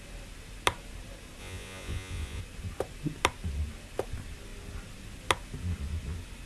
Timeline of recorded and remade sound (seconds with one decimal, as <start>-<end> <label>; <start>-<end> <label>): 0.0-1.4 recorded; 1.4-2.4 remade; 2.4-6.4 recorded

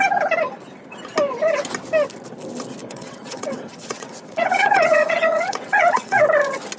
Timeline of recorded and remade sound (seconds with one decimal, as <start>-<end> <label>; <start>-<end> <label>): 0.0-2.8 recorded; 2.8-6.2 remade; 6.2-6.8 recorded